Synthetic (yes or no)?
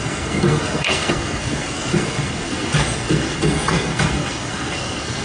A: yes